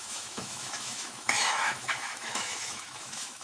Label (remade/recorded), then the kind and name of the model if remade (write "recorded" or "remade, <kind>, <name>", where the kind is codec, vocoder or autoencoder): remade, autoencoder, DAC-VAE